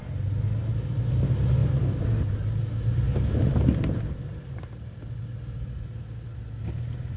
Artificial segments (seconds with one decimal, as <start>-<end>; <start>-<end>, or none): none